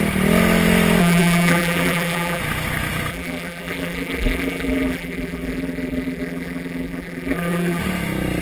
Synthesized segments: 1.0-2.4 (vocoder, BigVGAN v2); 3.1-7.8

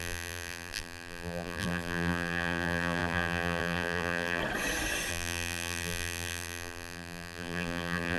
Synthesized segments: 0.0-4.4 (vocoder, BigVGAN v2); 5.1-8.2

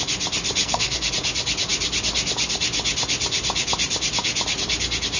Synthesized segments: 0.6-1.1 (codec, SNAC)